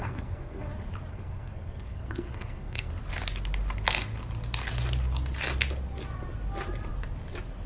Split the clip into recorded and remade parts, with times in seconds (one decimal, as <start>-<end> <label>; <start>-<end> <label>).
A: 0.0-0.7 remade; 0.7-1.1 recorded; 1.1-2.9 remade; 2.9-7.7 recorded